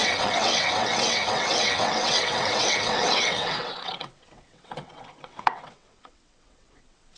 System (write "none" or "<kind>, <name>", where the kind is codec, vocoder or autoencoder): vocoder, WaveNeXt